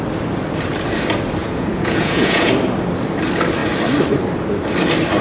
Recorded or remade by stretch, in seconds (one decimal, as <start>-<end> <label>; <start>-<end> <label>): 0.0-1.4 recorded; 1.4-2.5 remade; 2.5-5.2 recorded